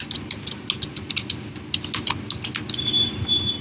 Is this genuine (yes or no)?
yes